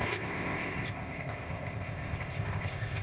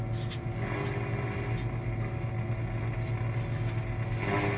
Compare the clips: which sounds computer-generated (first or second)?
first